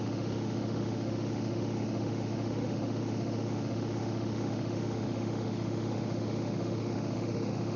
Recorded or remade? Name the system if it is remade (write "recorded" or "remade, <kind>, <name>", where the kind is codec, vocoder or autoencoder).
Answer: remade, autoencoder, DAC-VAE